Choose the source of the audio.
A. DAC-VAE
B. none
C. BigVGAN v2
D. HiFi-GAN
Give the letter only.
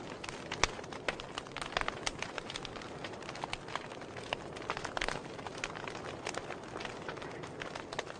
B